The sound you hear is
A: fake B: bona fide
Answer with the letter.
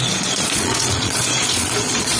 A